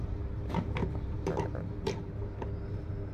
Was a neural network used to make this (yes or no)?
yes